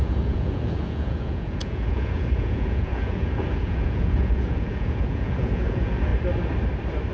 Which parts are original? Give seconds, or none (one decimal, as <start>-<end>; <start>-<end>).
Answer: 6.1-7.1